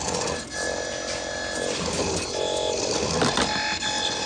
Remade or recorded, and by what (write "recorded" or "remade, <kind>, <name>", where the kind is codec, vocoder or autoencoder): recorded